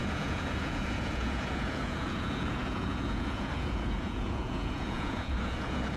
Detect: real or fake fake